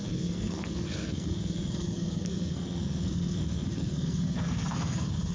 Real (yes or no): no